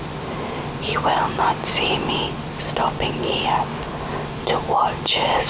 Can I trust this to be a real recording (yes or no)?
yes